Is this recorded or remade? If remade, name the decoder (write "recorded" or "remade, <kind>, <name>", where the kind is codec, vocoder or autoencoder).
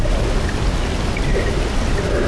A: recorded